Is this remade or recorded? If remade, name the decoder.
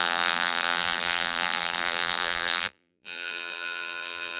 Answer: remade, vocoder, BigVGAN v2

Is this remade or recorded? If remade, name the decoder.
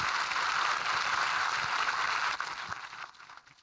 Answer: recorded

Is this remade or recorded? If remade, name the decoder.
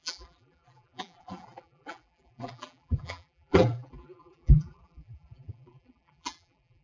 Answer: remade, vocoder, BigVGAN v2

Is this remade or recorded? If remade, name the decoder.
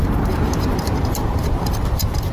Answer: remade, vocoder, BigVGAN v2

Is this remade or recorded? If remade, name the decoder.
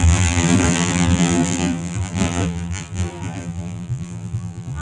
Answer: remade, vocoder, BigVGAN v2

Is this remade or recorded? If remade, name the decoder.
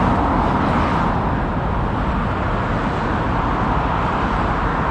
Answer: recorded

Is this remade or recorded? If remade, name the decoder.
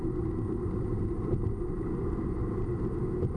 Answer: remade, vocoder, BigVGAN v2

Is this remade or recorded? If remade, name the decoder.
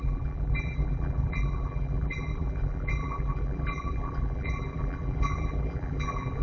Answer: remade, vocoder, BigVGAN v2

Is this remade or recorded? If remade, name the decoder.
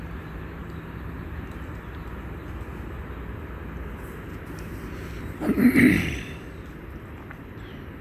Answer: recorded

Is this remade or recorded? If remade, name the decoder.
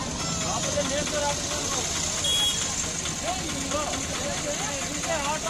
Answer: recorded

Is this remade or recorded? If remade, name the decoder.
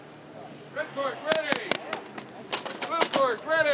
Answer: recorded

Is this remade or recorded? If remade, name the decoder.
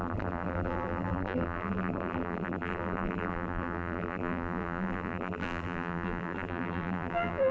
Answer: remade, vocoder, BigVGAN v2